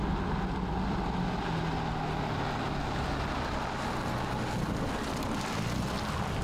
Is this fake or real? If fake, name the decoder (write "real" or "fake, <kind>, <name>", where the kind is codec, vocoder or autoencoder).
real